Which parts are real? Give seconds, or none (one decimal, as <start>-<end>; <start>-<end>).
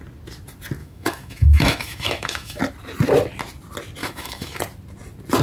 0.0-0.8; 2.6-4.0; 4.6-5.4